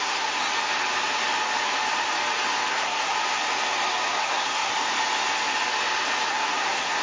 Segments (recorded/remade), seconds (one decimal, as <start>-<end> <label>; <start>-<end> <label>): 0.0-0.5 remade; 0.5-2.7 recorded; 2.7-3.1 remade; 3.1-4.2 recorded; 4.2-4.7 remade; 4.7-6.3 recorded; 6.3-7.0 remade